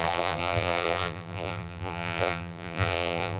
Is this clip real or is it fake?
fake